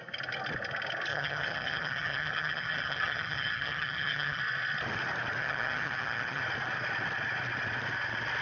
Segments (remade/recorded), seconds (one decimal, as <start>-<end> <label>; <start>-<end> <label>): 0.0-1.1 recorded; 1.1-4.4 remade; 4.4-5.4 recorded; 5.4-6.4 remade; 6.4-8.4 recorded